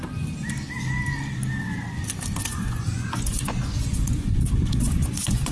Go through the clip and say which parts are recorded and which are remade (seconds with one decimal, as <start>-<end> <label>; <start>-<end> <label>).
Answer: 0.0-2.5 recorded; 2.5-5.5 remade

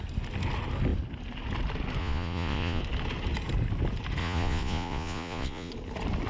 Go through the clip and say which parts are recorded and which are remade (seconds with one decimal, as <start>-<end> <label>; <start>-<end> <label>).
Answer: 0.0-2.0 recorded; 2.0-2.8 remade; 2.8-4.2 recorded; 4.2-5.7 remade; 5.7-6.3 recorded

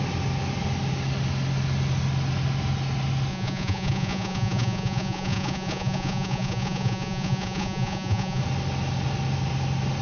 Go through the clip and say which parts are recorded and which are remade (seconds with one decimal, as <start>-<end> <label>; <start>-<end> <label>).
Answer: 0.0-3.3 recorded; 3.3-8.4 remade; 8.4-10.0 recorded

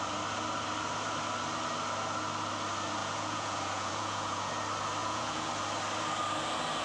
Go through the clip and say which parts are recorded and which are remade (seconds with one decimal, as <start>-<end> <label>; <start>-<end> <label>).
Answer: 0.0-3.0 recorded; 3.0-4.5 remade; 4.5-5.0 recorded; 5.0-5.5 remade; 5.5-6.8 recorded